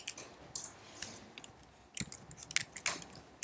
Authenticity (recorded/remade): recorded